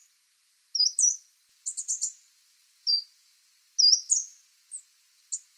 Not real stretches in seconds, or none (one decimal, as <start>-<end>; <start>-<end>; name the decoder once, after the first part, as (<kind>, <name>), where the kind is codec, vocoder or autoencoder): none

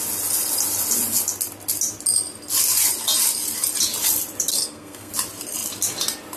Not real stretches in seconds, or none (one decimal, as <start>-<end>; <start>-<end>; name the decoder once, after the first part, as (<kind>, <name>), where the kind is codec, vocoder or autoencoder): 4.5-5.1 (codec, SNAC)

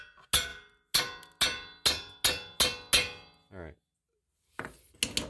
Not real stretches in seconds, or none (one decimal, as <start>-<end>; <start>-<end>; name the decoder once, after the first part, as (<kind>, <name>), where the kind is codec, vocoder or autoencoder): none

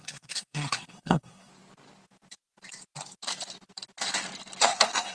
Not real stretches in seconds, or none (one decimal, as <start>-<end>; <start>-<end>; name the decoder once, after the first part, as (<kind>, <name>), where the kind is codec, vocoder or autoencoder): 0.0-1.5 (codec, SNAC); 4.6-5.1

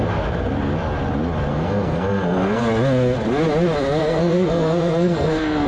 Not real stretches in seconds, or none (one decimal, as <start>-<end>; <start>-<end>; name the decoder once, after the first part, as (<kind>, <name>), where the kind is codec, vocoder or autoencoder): 1.5-2.6 (codec, SNAC); 4.0-5.7

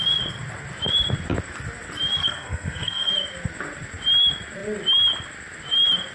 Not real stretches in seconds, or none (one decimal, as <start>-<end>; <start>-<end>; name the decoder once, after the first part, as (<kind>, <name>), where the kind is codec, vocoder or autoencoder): 2.2-3.1 (codec, SNAC)

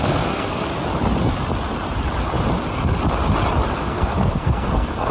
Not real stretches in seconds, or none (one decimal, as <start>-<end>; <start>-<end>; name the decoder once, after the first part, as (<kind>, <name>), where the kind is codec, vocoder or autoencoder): 0.0-0.7 (codec, SNAC); 3.8-5.1